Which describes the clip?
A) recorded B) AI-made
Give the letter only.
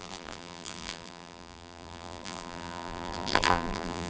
B